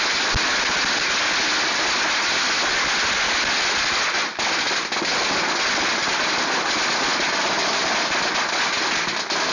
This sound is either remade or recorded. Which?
recorded